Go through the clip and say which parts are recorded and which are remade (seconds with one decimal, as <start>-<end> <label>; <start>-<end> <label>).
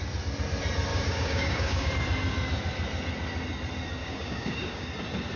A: 0.0-0.9 recorded; 0.9-1.9 remade; 1.9-4.0 recorded; 4.0-4.9 remade; 4.9-5.4 recorded